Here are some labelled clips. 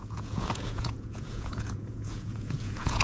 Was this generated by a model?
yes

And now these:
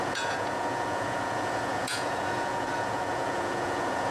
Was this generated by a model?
yes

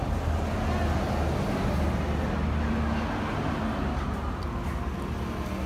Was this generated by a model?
no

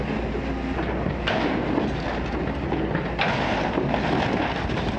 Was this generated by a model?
no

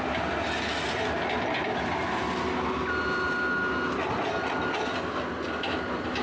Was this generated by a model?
no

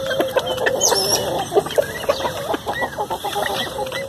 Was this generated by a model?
no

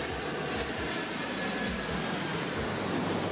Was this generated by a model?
no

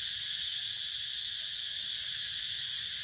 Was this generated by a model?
no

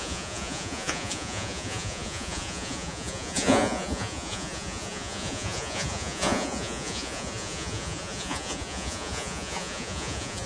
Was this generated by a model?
yes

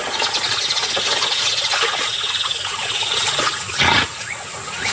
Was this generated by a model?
yes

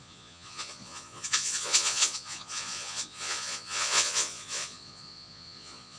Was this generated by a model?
yes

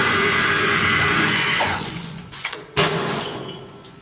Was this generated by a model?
yes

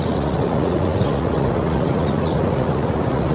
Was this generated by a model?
yes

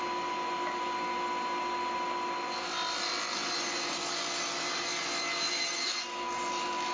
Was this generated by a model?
no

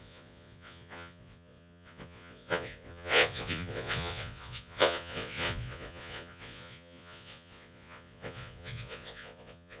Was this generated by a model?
yes